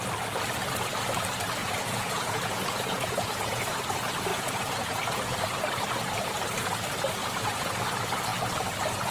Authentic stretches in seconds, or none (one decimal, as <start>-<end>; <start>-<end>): 0.0-1.6; 3.8-4.3; 5.6-7.2; 7.8-9.1